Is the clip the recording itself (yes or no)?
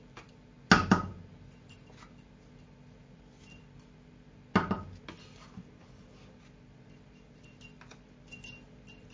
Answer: yes